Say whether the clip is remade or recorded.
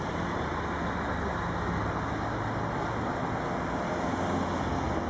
recorded